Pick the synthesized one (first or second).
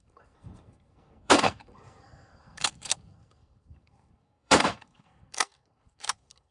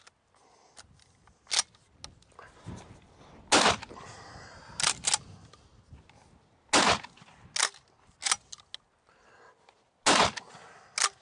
first